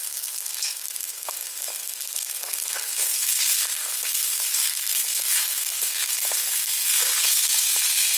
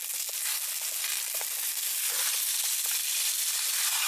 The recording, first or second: second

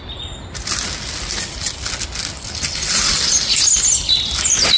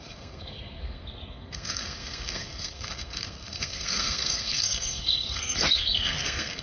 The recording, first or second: first